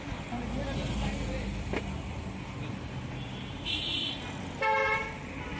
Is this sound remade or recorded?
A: recorded